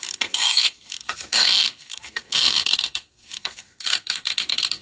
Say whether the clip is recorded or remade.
remade